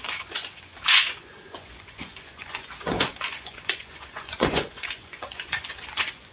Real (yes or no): no